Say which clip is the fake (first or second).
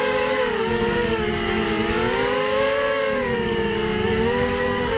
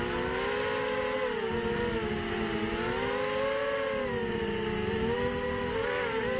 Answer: first